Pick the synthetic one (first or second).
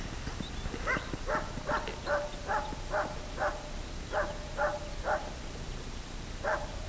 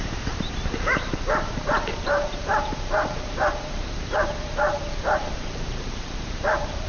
second